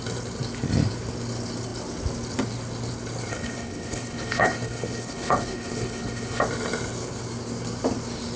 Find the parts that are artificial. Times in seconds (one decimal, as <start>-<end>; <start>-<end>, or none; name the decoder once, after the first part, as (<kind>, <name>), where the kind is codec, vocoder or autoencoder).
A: 3.3-6.4 (codec, HILCodec)